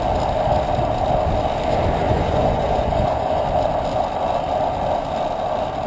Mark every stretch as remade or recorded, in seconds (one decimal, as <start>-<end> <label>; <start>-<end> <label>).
0.0-2.0 recorded; 2.0-3.4 remade; 3.4-5.9 recorded